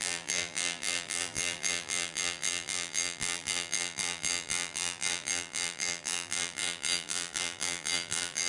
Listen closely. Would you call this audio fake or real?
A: fake